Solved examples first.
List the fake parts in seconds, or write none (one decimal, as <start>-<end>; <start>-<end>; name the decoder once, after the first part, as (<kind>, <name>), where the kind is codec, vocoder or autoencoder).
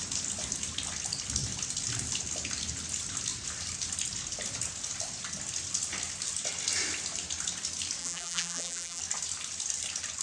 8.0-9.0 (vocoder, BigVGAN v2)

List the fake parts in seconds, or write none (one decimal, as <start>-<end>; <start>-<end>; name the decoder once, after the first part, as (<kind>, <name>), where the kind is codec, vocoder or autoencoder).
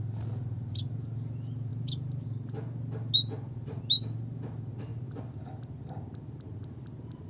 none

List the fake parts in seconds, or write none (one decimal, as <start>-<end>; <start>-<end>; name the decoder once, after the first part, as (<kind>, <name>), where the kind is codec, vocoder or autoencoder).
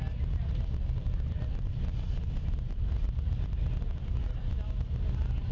0.9-4.2 (vocoder, BigVGAN v2)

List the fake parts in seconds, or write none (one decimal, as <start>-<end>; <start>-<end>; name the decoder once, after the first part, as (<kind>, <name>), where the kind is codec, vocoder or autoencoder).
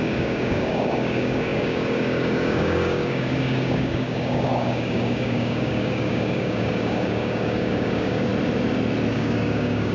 0.0-8.3 (codec, DAC); 9.1-9.9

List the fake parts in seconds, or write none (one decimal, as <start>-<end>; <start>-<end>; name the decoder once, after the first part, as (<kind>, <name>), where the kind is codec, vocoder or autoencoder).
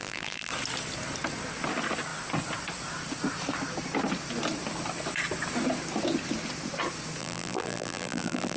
0.0-0.5 (vocoder, BigVGAN v2); 7.2-8.6